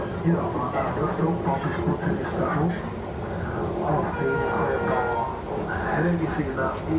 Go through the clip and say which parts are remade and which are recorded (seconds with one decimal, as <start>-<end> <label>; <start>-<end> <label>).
0.0-7.0 recorded